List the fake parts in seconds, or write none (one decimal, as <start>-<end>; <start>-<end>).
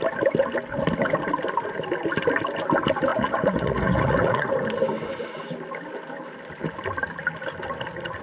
3.1-4.5